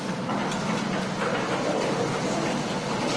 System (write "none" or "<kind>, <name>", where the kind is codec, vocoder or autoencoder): none